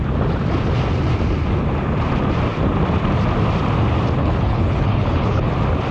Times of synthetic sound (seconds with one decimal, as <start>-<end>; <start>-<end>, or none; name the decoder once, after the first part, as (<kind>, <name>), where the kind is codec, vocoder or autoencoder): 4.2-5.5 (codec, HILCodec)